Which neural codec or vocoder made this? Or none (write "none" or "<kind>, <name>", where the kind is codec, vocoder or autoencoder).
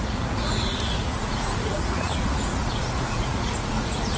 vocoder, Vocos